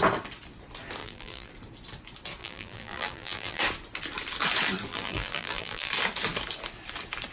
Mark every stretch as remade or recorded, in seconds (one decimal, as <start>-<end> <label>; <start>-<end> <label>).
0.0-1.0 recorded; 1.0-1.5 remade; 1.5-2.4 recorded; 2.4-3.6 remade; 3.6-4.9 recorded; 4.9-5.9 remade; 5.9-7.3 recorded